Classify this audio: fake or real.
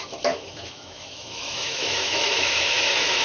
fake